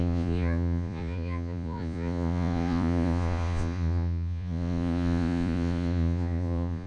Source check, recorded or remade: remade